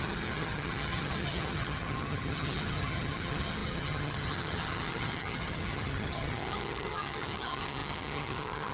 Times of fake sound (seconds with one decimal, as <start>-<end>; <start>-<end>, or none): 0.0-8.7

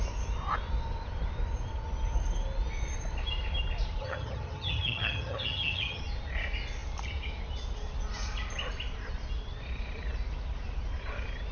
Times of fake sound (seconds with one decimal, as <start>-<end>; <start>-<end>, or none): 4.0-6.0

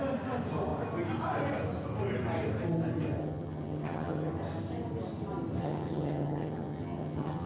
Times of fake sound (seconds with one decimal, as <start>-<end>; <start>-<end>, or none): 3.2-4.3; 5.6-7.5

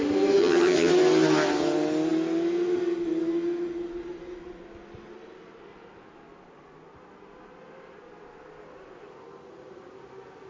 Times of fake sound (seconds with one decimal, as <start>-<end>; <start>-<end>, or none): 0.4-0.9

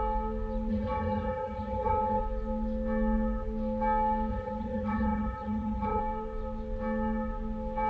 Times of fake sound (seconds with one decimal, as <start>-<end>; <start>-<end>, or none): 0.7-2.2; 4.3-6.0

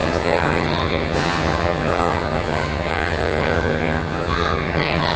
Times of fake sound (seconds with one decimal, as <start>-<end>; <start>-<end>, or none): 0.0-5.2